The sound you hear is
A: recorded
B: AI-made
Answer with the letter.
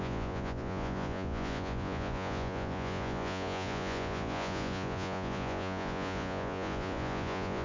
B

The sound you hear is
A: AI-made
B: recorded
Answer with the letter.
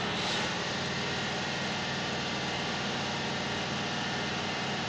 B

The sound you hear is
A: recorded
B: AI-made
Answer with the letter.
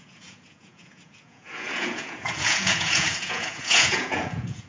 B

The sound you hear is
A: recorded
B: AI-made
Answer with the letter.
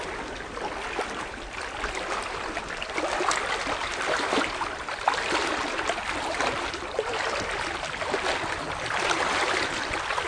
A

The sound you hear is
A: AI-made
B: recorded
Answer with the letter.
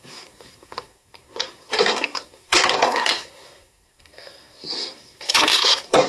A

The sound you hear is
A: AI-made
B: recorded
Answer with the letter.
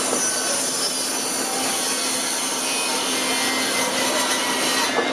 B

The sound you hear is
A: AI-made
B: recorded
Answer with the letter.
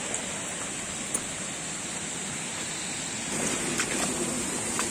B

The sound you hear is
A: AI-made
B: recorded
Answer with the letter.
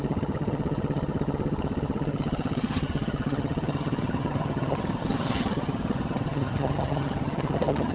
A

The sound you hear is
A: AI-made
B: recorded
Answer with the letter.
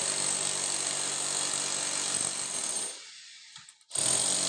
B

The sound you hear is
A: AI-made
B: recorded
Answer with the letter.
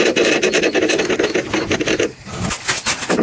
B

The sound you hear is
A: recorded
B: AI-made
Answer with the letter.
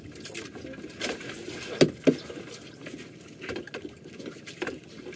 A